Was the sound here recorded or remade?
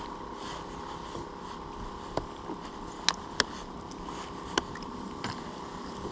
recorded